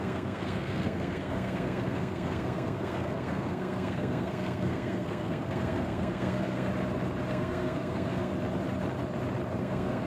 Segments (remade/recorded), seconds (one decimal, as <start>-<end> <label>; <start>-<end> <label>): 0.0-6.7 remade; 6.7-7.3 recorded; 7.3-8.3 remade; 8.3-9.6 recorded; 9.6-10.1 remade